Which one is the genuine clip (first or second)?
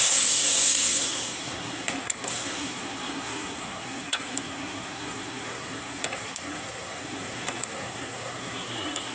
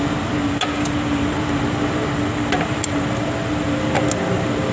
second